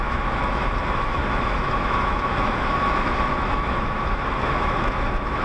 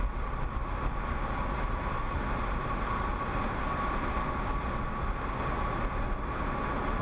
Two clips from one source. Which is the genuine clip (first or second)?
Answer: second